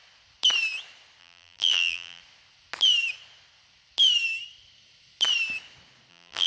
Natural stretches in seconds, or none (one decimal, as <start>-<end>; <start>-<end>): 0.0-1.2; 2.2-6.1